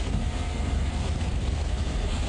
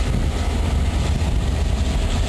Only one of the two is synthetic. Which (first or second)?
first